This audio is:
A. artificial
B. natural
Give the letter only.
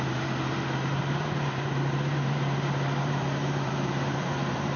A